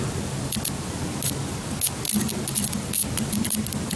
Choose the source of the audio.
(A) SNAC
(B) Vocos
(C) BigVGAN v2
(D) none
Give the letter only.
D